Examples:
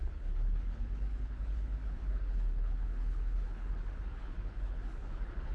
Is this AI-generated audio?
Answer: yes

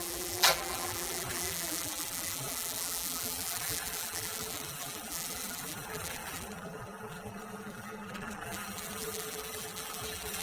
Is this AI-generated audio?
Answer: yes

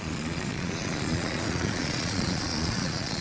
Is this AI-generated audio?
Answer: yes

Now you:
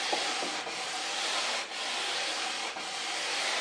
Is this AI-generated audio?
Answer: no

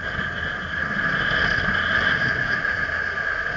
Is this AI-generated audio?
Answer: no